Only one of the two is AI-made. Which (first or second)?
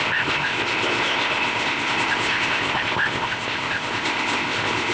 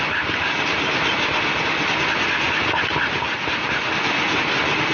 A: first